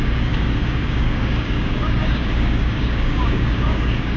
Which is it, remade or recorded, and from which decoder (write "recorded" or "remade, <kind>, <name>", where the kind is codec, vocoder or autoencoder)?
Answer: remade, codec, DAC